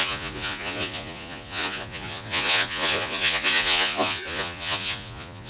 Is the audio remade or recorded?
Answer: remade